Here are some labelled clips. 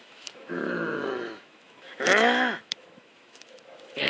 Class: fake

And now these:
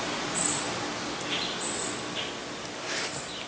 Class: real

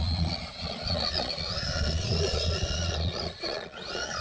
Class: fake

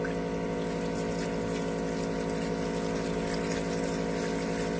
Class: real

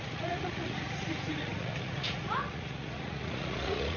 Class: fake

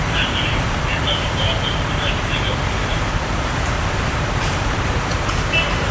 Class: fake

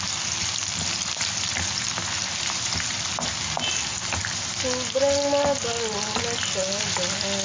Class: real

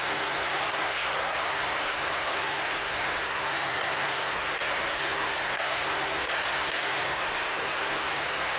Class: fake